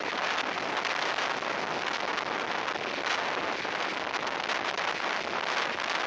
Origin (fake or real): real